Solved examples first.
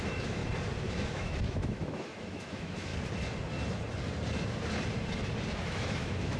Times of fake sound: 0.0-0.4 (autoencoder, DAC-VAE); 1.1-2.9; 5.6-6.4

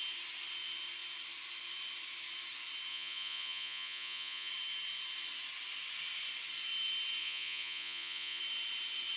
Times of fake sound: 2.9-4.5 (vocoder, Vocos); 7.2-8.4

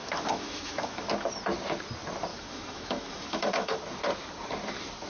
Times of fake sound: 0.0-1.1 (autoencoder, DAC-VAE); 2.3-3.8

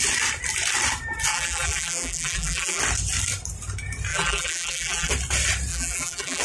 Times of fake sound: 1.3-2.8 (vocoder, BigVGAN v2); 4.1-5.1; 5.7-6.4

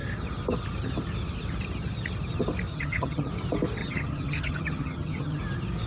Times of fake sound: 2.7-3.3 (vocoder, HiFi-GAN); 3.8-5.4

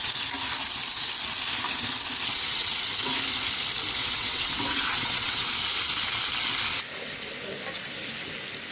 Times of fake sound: 2.3-3.2 (vocoder, WaveNeXt); 4.0-5.5

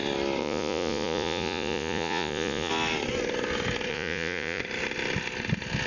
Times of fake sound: 0.4-2.7 (vocoder, Vocos); 3.9-4.6

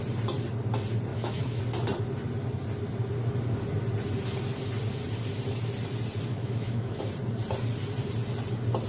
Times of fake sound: 1.1-1.6 (autoencoder, DAC-VAE); 6.3-7.0